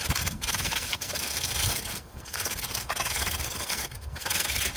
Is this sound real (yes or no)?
no